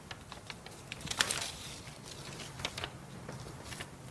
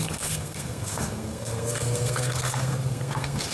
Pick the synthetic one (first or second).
second